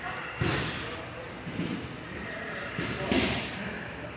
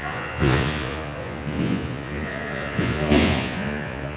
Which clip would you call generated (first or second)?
second